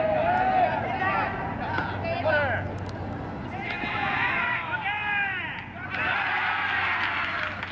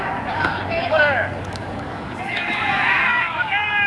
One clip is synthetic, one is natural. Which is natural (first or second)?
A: first